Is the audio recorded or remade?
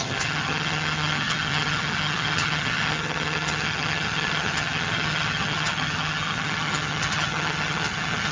remade